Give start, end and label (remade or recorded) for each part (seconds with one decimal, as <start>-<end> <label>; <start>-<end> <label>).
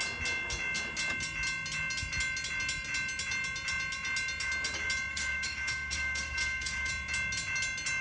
0.0-5.1 recorded; 5.1-6.9 remade; 6.9-8.0 recorded